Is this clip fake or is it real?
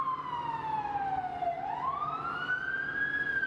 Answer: real